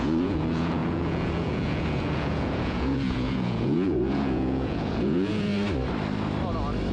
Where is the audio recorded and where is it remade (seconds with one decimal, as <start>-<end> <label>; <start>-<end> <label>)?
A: 0.0-5.5 remade; 5.5-6.9 recorded